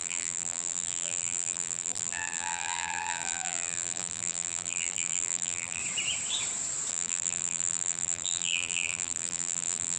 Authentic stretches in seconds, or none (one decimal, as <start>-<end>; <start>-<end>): 5.8-6.9